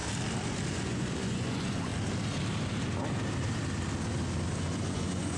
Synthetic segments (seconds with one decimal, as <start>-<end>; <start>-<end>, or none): 0.7-1.9; 4.6-5.4